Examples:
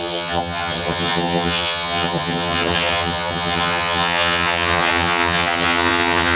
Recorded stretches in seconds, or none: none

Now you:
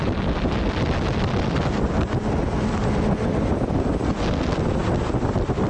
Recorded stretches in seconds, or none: 0.0-5.7

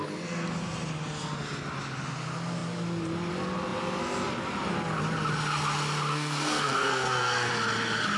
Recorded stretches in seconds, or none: 0.0-6.1; 7.5-8.2

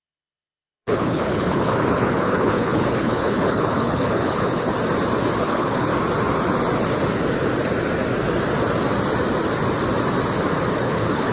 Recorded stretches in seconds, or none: 4.7-5.4; 5.9-10.9

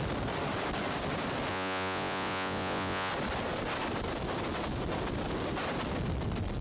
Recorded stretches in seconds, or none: 0.0-1.5; 3.1-6.6

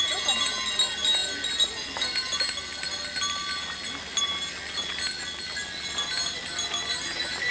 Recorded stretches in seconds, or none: 0.0-7.5

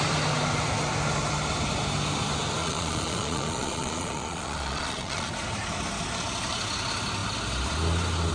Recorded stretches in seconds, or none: 0.0-2.6; 5.3-8.3

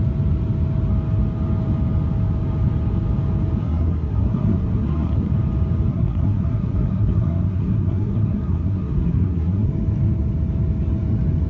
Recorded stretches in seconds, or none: 0.0-3.6; 5.3-5.9; 9.7-11.5